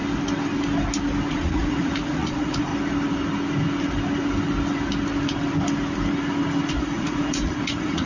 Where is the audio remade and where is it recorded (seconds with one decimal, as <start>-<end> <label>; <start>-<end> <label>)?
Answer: 0.0-1.3 recorded; 1.3-2.7 remade; 2.7-6.7 recorded; 6.7-8.1 remade